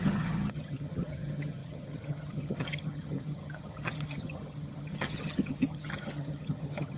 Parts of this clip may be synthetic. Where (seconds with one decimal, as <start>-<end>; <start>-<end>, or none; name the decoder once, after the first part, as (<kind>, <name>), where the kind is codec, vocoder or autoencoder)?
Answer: 0.0-7.0 (vocoder, HiFi-GAN)